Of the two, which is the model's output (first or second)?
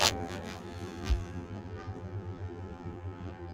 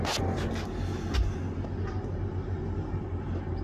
first